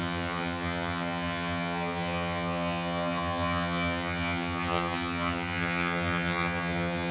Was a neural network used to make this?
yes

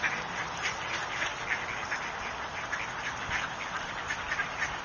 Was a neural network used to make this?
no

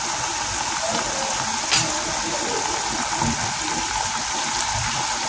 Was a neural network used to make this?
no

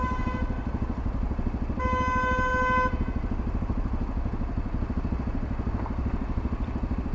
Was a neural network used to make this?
no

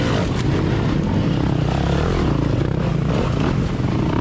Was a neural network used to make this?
no